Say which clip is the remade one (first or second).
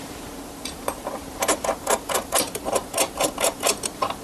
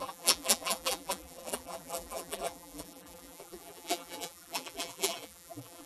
second